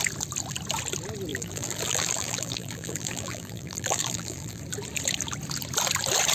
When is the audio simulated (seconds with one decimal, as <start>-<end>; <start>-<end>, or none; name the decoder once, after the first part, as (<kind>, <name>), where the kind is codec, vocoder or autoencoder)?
1.3-4.6 (vocoder, BigVGAN v2)